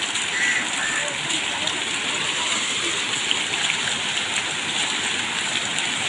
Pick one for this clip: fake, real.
real